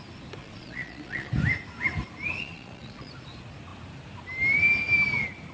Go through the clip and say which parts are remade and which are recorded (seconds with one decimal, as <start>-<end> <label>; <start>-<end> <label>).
0.0-0.4 recorded; 0.4-1.3 remade; 1.3-2.4 recorded; 2.4-3.1 remade; 3.1-5.5 recorded